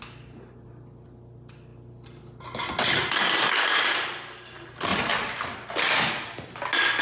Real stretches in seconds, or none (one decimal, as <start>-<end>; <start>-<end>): 0.0-7.0